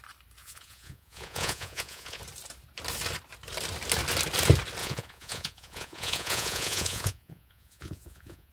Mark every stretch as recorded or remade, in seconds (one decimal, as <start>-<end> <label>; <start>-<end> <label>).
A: 0.0-0.4 recorded; 0.4-2.2 remade; 2.2-4.8 recorded; 4.8-8.5 remade